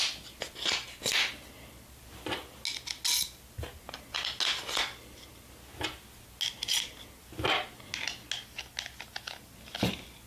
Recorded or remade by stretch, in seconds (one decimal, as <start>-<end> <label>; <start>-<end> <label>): 0.0-10.3 recorded